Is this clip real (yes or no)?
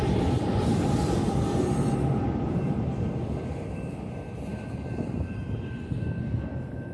no